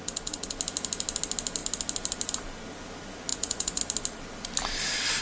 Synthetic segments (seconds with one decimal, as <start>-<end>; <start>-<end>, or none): 3.3-3.8